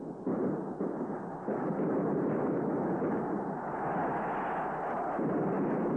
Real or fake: real